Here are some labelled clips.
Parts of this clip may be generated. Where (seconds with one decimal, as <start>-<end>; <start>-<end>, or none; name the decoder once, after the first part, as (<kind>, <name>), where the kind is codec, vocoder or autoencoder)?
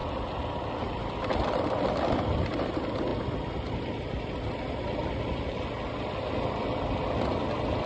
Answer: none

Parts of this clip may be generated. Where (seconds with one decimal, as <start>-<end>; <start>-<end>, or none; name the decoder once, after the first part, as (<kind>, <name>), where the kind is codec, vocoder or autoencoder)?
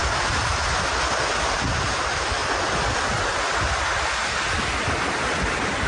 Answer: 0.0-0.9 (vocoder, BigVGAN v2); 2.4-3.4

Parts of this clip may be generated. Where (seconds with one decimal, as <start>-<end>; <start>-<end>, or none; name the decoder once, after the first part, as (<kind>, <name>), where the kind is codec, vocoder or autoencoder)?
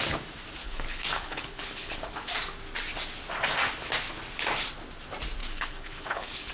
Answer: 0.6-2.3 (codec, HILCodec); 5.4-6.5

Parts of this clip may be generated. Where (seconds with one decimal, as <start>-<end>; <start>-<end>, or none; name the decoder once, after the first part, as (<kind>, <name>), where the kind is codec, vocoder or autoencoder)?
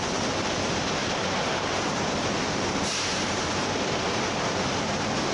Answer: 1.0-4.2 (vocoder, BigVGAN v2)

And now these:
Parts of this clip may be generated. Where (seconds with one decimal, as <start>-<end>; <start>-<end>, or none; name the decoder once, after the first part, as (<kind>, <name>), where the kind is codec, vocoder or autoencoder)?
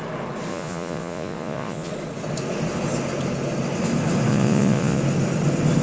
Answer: 0.5-1.9 (vocoder, Vocos); 4.3-5.0